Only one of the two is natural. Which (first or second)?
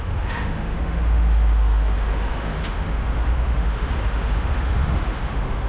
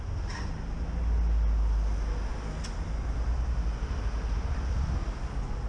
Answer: second